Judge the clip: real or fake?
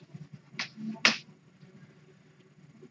real